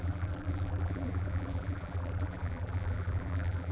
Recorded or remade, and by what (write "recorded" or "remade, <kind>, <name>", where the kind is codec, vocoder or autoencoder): remade, vocoder, BigVGAN v2